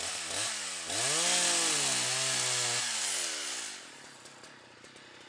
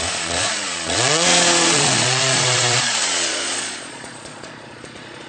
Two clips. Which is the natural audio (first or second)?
first